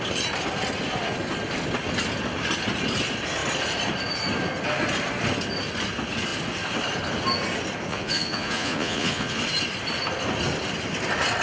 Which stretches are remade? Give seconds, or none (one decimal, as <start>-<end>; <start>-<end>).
7.9-9.4